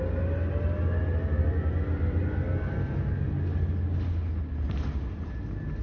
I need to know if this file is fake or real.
real